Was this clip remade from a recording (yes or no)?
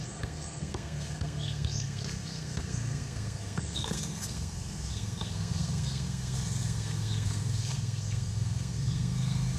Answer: yes